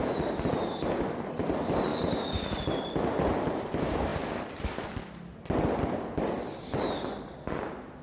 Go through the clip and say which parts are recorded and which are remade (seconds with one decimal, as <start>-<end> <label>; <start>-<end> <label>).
0.0-8.0 recorded